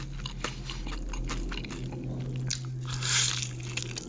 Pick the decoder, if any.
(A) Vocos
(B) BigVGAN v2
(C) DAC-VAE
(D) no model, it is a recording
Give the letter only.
D